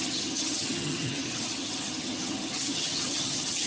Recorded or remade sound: remade